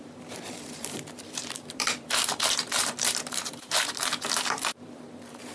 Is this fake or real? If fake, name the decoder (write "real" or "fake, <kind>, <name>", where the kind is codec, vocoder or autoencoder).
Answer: fake, vocoder, BigVGAN v2